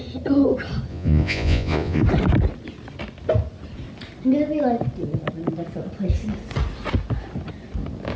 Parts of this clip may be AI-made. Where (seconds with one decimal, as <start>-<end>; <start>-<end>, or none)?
0.9-2.0